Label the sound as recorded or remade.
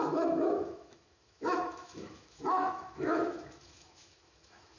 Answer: remade